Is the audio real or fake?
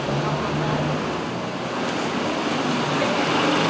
real